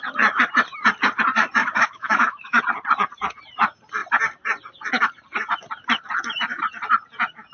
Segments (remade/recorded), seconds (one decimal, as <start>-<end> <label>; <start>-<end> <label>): 0.0-1.6 recorded; 1.6-2.6 remade; 2.6-7.5 recorded